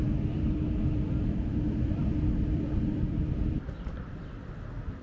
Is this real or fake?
fake